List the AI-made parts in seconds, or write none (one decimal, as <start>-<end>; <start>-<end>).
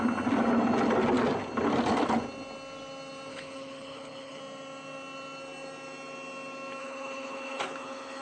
3.3-4.4; 6.8-8.2